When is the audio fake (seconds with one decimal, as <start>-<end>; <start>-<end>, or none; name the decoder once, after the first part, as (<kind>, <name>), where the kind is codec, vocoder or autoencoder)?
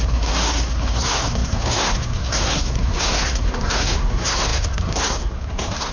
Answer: 0.0-5.9 (codec, SNAC)